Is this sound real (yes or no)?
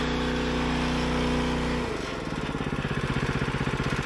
yes